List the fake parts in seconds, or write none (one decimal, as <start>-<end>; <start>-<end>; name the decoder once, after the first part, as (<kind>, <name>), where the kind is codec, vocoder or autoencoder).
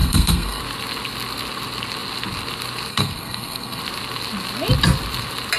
0.0-0.6 (codec, SNAC); 2.9-3.8